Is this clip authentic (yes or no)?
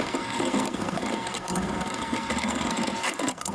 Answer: no